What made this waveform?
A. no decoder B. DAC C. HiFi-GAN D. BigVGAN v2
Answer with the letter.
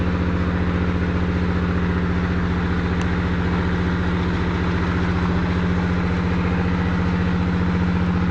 A